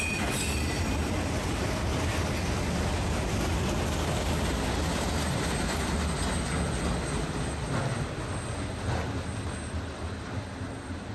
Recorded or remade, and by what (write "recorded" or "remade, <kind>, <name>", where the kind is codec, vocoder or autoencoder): recorded